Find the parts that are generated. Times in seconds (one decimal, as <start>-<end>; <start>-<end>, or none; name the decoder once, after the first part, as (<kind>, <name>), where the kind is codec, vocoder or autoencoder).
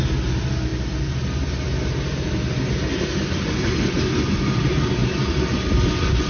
none